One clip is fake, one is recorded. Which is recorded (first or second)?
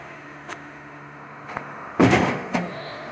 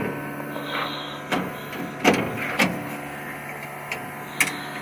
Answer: second